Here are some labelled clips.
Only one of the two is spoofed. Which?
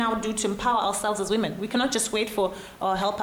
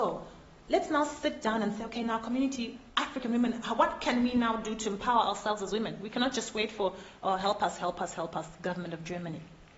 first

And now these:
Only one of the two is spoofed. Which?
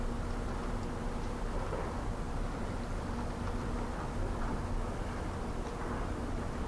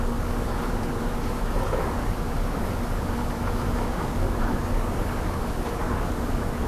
second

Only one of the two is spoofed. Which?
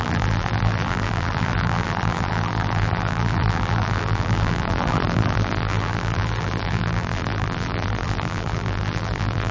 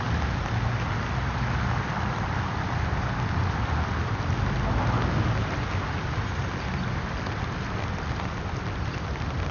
first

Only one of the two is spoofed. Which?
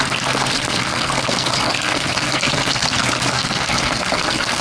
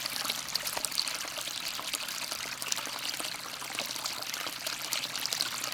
first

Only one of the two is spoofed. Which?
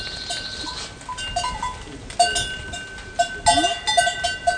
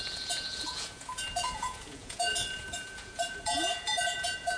second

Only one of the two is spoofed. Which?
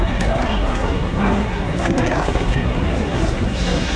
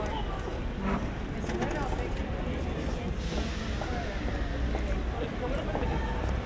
first